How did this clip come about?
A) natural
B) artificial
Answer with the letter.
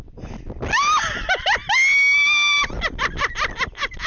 A